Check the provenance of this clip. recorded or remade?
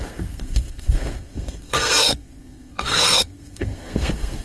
remade